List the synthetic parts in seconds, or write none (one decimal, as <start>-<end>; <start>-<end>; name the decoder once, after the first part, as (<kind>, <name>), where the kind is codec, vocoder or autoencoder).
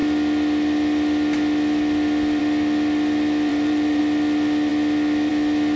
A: 3.5-4.0 (vocoder, BigVGAN v2)